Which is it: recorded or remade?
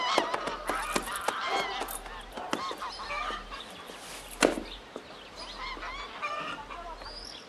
recorded